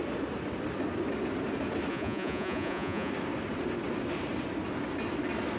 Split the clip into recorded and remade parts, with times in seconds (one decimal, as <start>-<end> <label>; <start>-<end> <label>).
0.0-1.9 recorded; 1.9-3.1 remade; 3.1-5.6 recorded

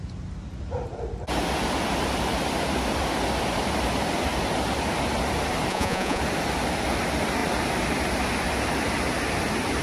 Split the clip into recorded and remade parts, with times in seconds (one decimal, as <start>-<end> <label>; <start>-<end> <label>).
0.0-5.7 recorded; 5.7-6.2 remade; 6.2-9.8 recorded

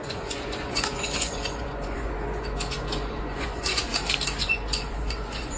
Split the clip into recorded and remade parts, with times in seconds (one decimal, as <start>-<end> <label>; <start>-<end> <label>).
0.0-3.9 remade; 3.9-4.4 recorded; 4.4-5.6 remade

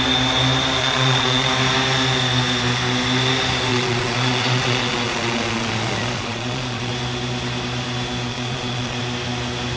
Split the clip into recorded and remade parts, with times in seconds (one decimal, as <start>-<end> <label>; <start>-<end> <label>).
0.0-0.8 recorded; 0.8-1.5 remade; 1.5-3.7 recorded; 3.7-6.9 remade; 6.9-8.3 recorded; 8.3-9.0 remade; 9.0-9.8 recorded

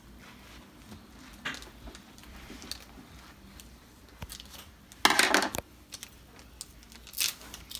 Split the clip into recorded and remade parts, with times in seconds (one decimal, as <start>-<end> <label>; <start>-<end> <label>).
0.0-7.8 recorded

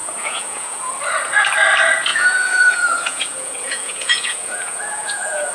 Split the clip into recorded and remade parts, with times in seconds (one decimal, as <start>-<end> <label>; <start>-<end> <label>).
0.0-0.9 remade; 0.9-2.1 recorded; 2.1-5.5 remade